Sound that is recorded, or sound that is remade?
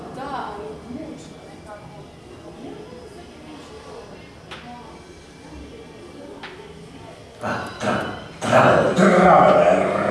recorded